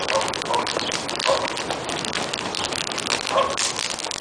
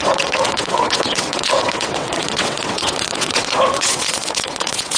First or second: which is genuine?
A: first